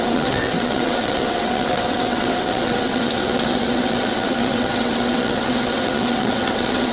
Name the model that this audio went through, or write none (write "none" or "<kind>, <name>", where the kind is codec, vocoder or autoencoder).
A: vocoder, WaveNeXt